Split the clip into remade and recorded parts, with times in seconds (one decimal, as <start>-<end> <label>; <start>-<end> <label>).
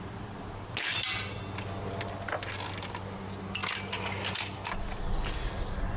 0.0-6.0 recorded